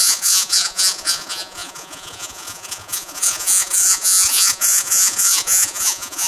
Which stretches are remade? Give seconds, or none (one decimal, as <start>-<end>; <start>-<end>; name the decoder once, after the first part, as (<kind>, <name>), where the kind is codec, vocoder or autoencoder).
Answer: 0.0-6.3 (vocoder, Vocos)